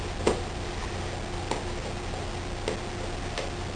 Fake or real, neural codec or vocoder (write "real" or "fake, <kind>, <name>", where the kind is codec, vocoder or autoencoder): real